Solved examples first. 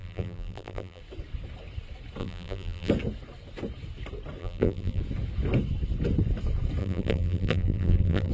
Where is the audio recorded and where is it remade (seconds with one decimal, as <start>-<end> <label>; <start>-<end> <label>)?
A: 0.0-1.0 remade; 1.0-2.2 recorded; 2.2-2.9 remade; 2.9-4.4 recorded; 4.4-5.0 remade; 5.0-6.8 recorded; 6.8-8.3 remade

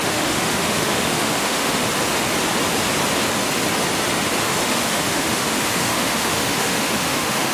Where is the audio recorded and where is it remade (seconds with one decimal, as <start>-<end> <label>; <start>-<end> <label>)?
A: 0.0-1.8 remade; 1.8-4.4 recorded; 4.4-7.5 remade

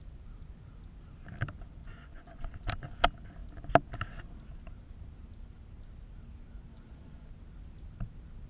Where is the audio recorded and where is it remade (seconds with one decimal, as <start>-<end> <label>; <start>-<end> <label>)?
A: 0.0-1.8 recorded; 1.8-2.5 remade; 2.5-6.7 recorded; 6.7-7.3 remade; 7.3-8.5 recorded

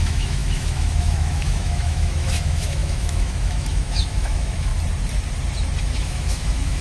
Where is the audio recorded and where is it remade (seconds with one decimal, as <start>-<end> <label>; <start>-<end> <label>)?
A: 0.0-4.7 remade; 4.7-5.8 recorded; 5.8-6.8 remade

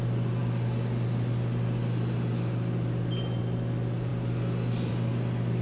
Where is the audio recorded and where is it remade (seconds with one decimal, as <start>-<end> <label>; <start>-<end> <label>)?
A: 0.0-5.6 recorded